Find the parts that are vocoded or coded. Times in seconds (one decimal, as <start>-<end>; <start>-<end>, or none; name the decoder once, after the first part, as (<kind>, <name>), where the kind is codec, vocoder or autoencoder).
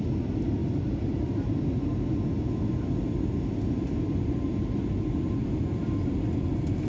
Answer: 0.6-1.5 (vocoder, BigVGAN v2)